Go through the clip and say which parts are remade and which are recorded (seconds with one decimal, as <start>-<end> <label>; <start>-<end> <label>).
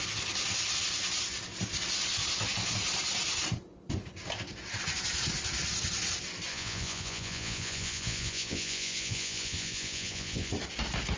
0.0-6.5 recorded; 6.5-10.5 remade; 10.5-11.2 recorded